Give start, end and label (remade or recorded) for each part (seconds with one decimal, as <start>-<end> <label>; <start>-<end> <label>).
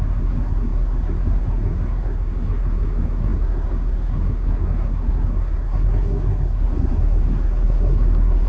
0.0-8.5 remade